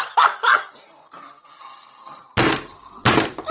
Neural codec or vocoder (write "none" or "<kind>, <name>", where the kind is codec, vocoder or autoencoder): none